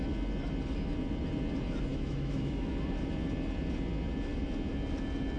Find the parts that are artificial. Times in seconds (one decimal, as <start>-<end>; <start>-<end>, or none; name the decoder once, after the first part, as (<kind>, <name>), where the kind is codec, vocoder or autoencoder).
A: 1.9-2.7 (autoencoder, DAC-VAE)